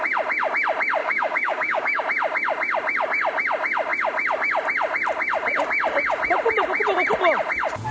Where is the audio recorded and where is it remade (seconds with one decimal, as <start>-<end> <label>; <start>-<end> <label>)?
0.0-1.0 recorded; 1.0-2.0 remade; 2.0-7.9 recorded